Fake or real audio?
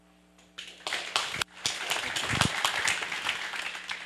real